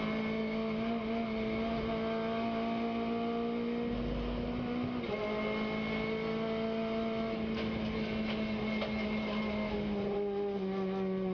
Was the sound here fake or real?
real